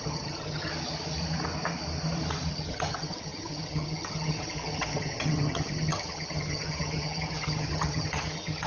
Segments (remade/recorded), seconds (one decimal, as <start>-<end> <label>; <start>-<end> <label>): 0.0-0.7 remade; 0.7-2.5 recorded; 2.5-8.7 remade